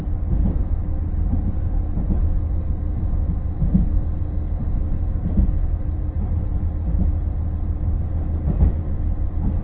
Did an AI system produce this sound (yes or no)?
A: no